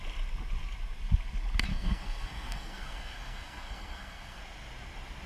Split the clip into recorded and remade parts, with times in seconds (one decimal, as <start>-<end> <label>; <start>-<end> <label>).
0.0-1.7 recorded; 1.7-4.4 remade; 4.4-5.3 recorded